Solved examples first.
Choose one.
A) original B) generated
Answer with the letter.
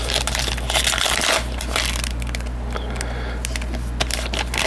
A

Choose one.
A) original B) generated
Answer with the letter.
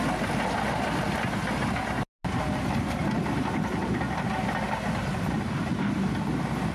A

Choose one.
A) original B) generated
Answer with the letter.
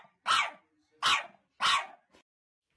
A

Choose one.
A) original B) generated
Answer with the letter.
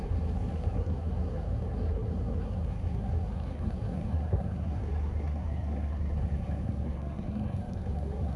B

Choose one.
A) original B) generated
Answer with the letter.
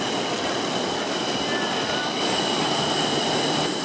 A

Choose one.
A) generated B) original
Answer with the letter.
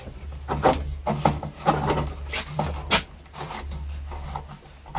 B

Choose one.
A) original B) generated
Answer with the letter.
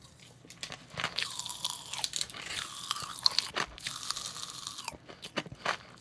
A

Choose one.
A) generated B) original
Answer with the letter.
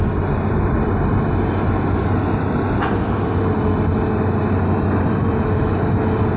B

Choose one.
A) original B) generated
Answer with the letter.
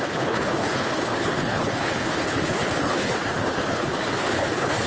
B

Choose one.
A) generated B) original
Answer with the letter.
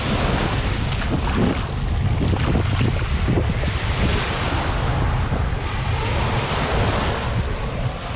B